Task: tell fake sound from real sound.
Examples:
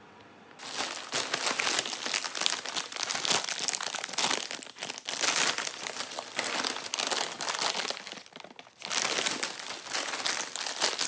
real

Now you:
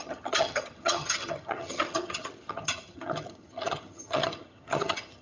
fake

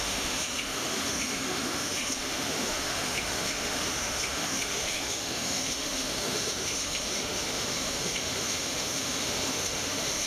fake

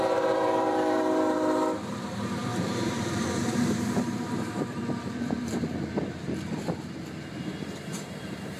fake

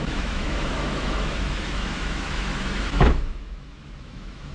fake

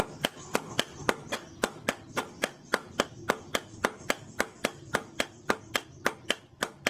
fake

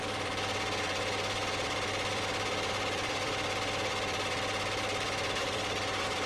fake